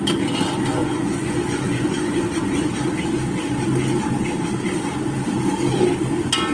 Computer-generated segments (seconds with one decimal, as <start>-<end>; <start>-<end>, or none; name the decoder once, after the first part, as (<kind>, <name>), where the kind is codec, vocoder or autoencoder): 0.8-2.3 (vocoder, Vocos)